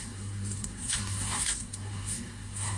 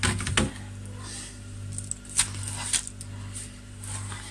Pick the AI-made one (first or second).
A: first